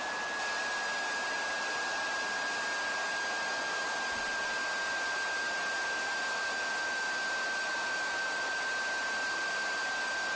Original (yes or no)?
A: yes